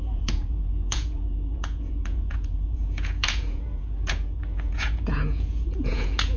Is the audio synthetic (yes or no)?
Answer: yes